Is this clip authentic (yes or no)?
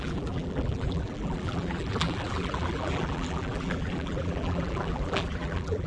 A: no